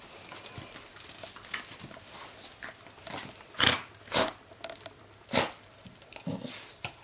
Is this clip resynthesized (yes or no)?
no